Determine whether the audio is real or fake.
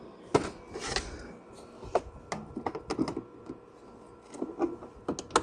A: real